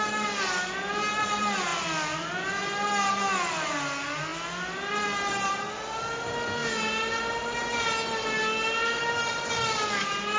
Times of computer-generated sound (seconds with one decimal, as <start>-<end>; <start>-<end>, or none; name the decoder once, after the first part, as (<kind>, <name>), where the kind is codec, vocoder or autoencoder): none